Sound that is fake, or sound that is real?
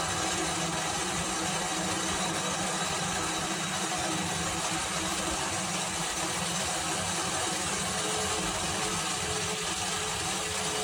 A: real